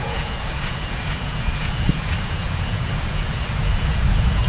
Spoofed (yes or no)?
yes